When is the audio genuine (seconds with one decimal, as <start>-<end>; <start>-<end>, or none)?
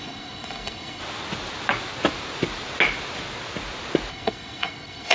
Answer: 1.0-4.1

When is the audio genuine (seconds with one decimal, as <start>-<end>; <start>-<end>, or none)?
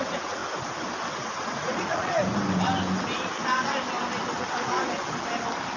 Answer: 0.4-1.1; 2.2-5.8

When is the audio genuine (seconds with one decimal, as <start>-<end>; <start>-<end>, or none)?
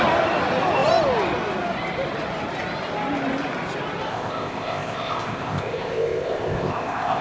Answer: 0.0-4.1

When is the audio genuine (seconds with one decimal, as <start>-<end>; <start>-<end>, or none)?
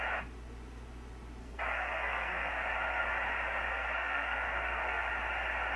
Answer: 0.0-1.4; 2.5-3.7; 5.1-5.8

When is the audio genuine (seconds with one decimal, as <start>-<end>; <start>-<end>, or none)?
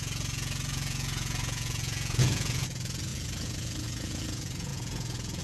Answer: none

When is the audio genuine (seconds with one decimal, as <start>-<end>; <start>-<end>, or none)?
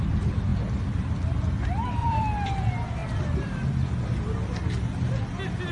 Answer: 0.0-2.0; 2.6-3.0; 3.7-5.7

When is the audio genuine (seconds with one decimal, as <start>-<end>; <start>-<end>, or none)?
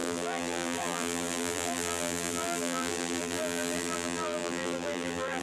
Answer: none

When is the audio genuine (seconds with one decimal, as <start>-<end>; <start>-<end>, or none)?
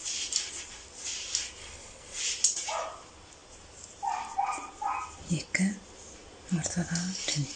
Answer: 0.0-1.6; 2.2-7.6